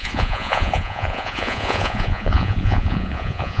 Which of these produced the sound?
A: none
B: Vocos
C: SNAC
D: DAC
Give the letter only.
B